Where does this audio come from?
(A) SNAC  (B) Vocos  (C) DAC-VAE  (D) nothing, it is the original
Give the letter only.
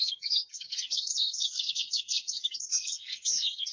A